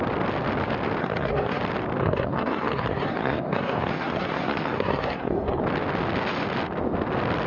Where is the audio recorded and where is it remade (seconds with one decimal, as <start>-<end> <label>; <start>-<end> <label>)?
0.0-1.0 recorded; 1.0-1.6 remade; 1.6-2.0 recorded; 2.0-5.6 remade; 5.6-7.5 recorded